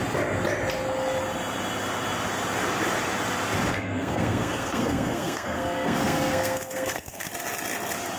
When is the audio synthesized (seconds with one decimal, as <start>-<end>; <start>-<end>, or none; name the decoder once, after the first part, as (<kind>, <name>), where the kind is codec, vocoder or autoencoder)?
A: 3.7-7.3 (codec, SNAC)